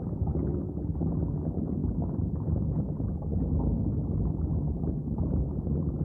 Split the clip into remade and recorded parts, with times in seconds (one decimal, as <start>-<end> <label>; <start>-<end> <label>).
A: 0.0-1.8 recorded; 1.8-2.8 remade; 2.8-4.5 recorded; 4.5-5.2 remade; 5.2-6.0 recorded